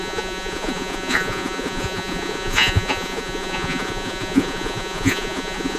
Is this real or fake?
fake